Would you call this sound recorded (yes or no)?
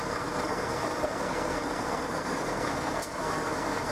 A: no